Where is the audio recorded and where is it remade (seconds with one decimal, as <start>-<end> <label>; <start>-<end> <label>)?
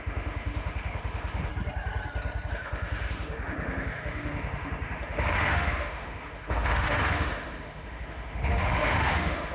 0.0-1.5 remade; 1.5-2.5 recorded; 2.5-9.5 remade